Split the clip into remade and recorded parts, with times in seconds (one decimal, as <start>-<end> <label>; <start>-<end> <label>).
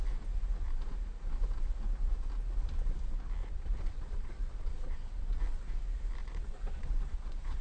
0.0-3.4 recorded; 3.4-5.4 remade; 5.4-6.2 recorded; 6.2-7.6 remade